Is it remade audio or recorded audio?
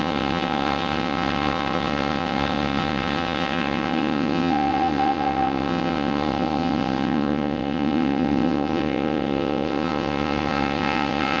remade